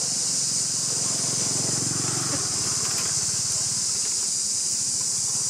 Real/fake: real